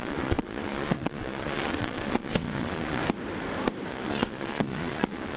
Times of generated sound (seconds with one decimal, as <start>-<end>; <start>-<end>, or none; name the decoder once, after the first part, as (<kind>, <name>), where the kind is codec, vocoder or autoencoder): 0.0-3.0 (vocoder, Vocos); 3.9-5.4